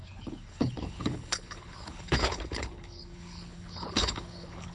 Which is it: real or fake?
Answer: fake